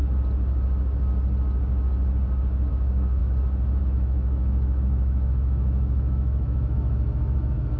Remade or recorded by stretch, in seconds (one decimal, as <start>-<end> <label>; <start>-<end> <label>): 0.0-2.7 recorded; 2.7-3.2 remade; 3.2-3.8 recorded; 3.8-7.8 remade